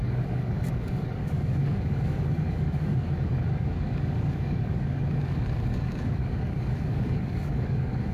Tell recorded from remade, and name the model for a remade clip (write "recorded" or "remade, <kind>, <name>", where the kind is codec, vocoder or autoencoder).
remade, codec, DAC